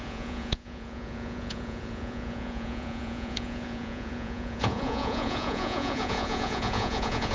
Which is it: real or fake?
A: fake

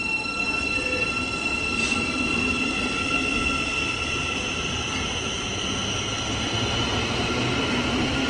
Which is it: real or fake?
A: real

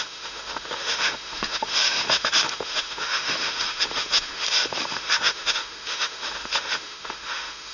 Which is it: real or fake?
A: fake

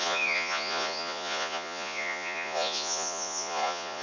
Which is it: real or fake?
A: fake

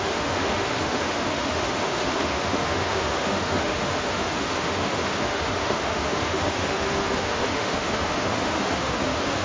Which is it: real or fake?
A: fake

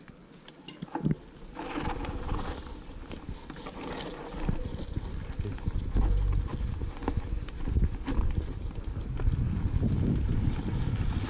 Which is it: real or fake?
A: real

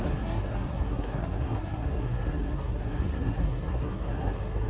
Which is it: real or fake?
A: fake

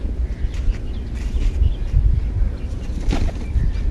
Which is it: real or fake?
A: real